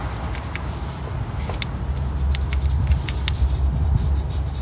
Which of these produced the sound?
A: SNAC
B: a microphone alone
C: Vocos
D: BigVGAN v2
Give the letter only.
B